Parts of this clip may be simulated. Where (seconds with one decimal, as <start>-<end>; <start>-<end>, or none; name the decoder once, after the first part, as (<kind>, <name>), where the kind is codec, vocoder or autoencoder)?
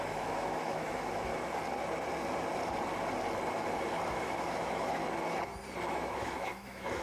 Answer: 0.0-1.3 (autoencoder, DAC-VAE); 4.1-5.0; 5.9-7.0